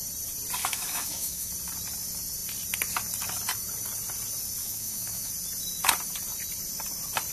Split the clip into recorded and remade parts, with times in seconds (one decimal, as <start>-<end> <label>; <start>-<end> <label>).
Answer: 0.0-0.6 recorded; 0.6-1.5 remade; 1.5-4.6 recorded; 4.6-5.3 remade; 5.3-7.3 recorded